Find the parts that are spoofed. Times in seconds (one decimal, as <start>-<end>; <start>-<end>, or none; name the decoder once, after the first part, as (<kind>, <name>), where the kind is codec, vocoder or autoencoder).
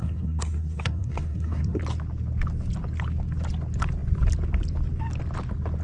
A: 0.0-1.8 (codec, SNAC)